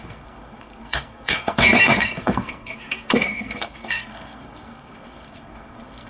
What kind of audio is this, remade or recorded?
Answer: remade